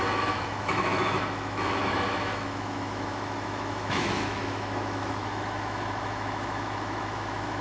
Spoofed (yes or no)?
yes